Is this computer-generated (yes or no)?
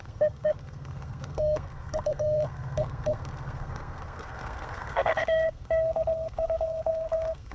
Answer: yes